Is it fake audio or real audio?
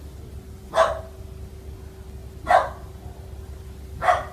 real